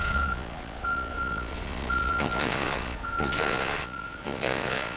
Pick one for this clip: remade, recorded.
remade